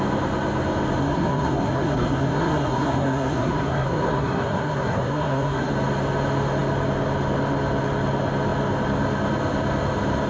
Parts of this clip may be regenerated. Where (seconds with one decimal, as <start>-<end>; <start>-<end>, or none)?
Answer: 1.0-5.7